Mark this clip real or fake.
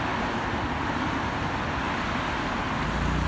real